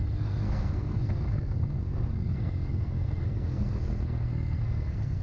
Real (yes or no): no